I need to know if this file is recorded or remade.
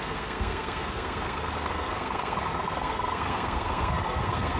remade